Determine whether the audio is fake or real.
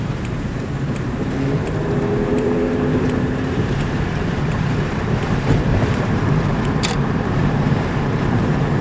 fake